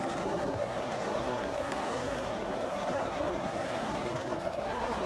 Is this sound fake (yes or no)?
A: yes